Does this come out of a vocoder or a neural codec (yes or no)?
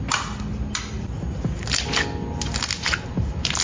no